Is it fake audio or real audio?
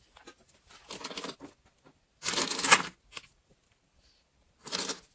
real